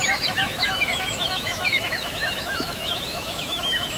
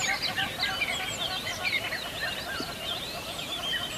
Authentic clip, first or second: second